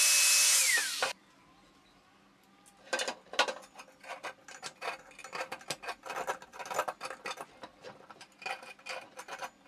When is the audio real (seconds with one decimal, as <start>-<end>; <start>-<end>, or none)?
0.0-9.7